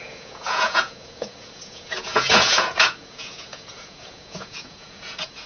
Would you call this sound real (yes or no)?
no